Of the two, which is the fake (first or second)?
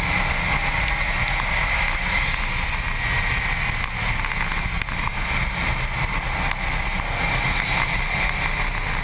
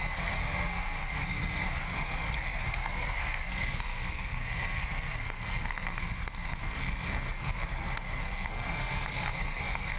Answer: second